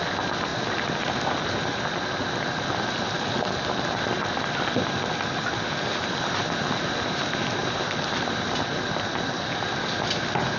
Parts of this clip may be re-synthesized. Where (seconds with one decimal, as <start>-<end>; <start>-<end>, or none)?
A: none